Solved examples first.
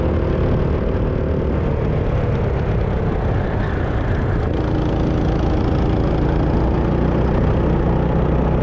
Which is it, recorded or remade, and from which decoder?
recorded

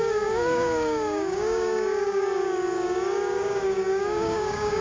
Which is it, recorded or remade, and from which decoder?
remade, codec, DAC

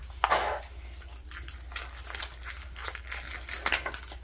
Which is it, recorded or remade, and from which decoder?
recorded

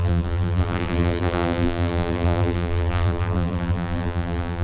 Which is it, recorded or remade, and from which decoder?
remade, vocoder, BigVGAN v2